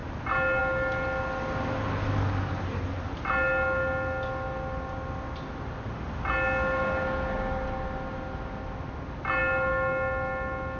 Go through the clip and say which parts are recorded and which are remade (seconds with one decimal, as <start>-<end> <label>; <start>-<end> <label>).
0.0-10.8 recorded